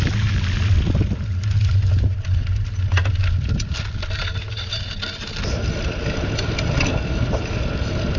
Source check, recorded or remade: recorded